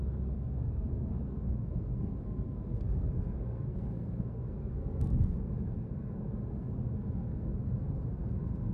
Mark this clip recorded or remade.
remade